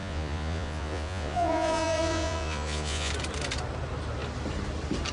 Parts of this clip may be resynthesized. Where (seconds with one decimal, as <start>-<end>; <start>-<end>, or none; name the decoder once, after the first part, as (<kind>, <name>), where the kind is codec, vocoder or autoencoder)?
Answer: 0.0-3.1 (vocoder, Vocos)